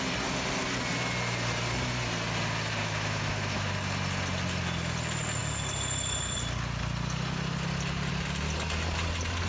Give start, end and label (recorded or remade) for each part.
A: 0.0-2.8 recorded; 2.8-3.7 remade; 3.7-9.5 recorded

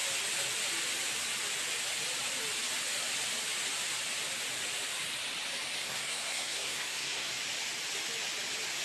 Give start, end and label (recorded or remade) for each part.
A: 0.0-5.8 recorded; 5.8-7.3 remade; 7.3-8.8 recorded

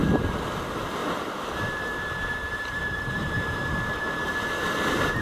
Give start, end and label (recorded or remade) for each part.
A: 0.0-0.6 remade; 0.6-1.0 recorded; 1.0-4.1 remade; 4.1-5.2 recorded

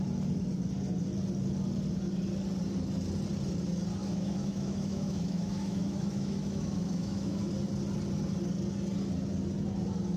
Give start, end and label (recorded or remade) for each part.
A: 0.0-4.0 recorded; 4.0-7.4 remade; 7.4-10.2 recorded

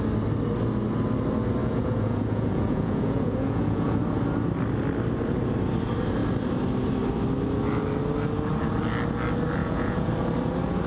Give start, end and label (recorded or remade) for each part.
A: 0.0-1.6 recorded; 1.6-4.0 remade; 4.0-9.6 recorded; 9.6-10.1 remade; 10.1-10.9 recorded